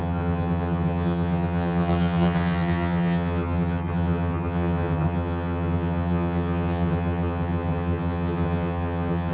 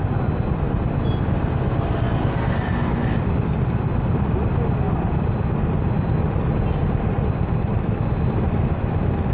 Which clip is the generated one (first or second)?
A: first